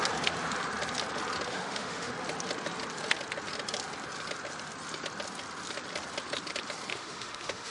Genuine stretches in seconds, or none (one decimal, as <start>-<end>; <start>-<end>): 0.0-1.5; 2.1-6.9